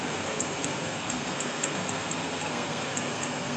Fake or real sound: fake